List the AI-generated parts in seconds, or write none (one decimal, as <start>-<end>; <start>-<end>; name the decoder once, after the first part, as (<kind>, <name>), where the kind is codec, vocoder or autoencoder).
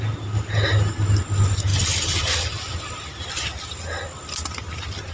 1.7-5.1 (vocoder, BigVGAN v2)